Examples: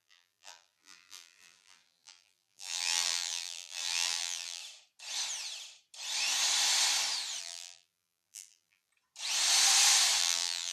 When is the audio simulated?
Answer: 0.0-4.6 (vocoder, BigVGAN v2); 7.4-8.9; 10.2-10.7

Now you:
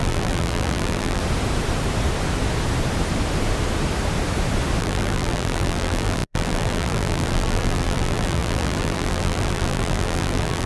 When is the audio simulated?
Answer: 0.0-1.2 (vocoder, BigVGAN v2); 4.8-10.7

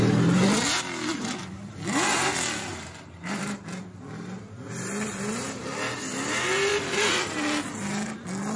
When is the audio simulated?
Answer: 2.7-3.6 (vocoder, BigVGAN v2); 6.7-7.3

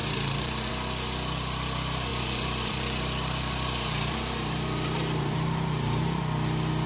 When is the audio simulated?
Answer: 0.0-0.7 (vocoder, BigVGAN v2); 2.1-6.2

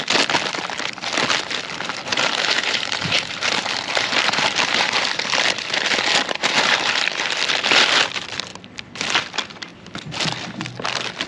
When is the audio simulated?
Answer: 2.1-7.3 (vocoder, BigVGAN v2)

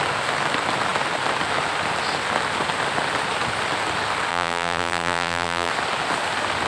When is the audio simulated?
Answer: 4.3-5.7 (vocoder, BigVGAN v2)

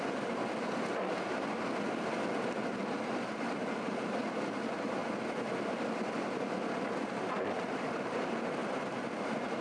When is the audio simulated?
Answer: 0.0-0.4 (vocoder, BigVGAN v2); 2.7-5.0; 7.3-8.6